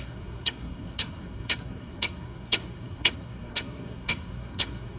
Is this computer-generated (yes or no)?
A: yes